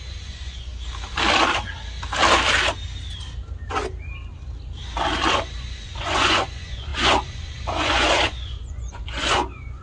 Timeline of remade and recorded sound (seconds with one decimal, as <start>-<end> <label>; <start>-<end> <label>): 0.0-0.7 remade; 0.7-5.6 recorded; 5.6-9.8 remade